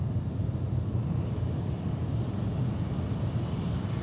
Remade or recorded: recorded